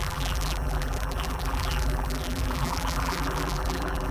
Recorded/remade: remade